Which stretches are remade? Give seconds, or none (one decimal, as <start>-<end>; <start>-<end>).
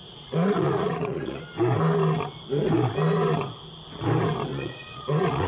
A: 0.0-1.4; 4.5-5.5